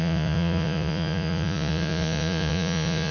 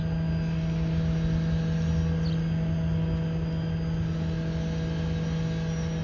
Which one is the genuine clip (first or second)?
second